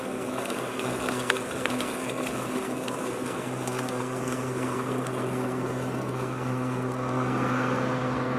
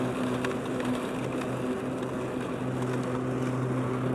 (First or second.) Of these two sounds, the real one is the second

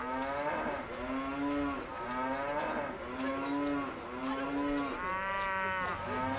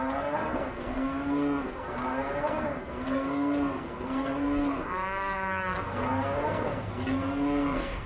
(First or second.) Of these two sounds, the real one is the first